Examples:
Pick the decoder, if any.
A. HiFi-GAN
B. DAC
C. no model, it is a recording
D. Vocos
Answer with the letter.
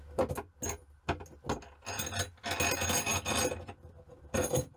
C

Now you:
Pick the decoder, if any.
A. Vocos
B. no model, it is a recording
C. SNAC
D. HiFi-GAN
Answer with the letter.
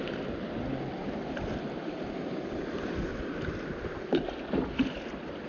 B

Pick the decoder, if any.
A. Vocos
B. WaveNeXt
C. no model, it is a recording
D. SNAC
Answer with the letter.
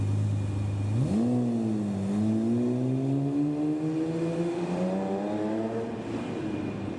C